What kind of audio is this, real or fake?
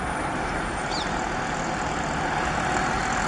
real